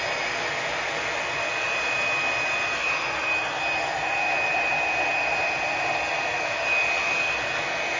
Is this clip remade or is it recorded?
recorded